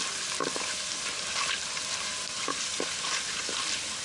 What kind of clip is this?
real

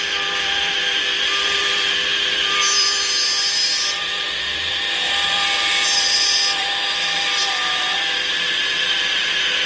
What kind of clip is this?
fake